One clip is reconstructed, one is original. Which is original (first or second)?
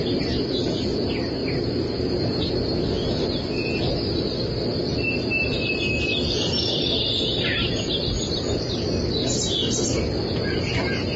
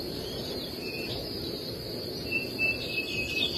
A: first